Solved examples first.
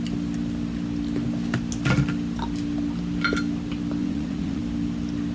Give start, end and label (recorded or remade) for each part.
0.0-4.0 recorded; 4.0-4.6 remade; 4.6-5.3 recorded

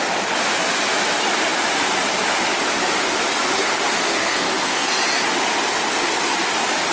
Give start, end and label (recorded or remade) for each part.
0.0-4.1 recorded; 4.1-4.9 remade; 4.9-6.9 recorded

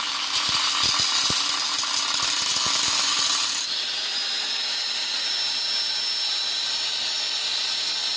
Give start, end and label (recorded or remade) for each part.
0.0-8.2 recorded

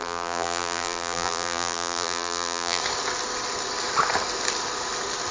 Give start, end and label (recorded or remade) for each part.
0.0-2.8 remade; 2.8-5.3 recorded

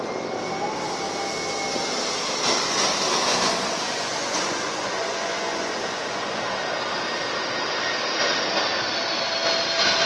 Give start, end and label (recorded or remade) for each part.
0.0-3.3 recorded; 3.3-6.4 remade; 6.4-10.1 recorded

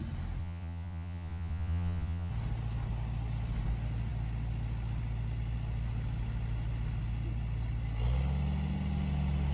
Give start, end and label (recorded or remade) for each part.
0.0-0.4 recorded; 0.4-2.3 remade; 2.3-9.5 recorded

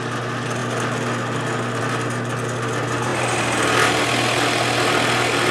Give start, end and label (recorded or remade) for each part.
0.0-3.1 recorded; 3.1-4.0 remade; 4.0-5.5 recorded

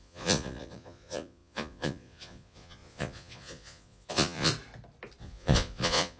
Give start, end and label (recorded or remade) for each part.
0.0-4.5 remade; 4.5-5.2 recorded; 5.2-6.2 remade